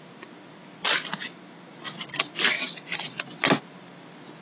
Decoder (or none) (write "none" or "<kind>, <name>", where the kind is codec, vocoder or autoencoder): none